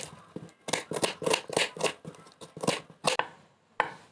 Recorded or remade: recorded